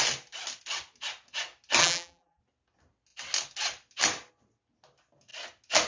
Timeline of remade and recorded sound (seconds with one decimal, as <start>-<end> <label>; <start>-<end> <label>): 0.0-1.8 recorded; 1.8-2.4 remade; 2.4-5.9 recorded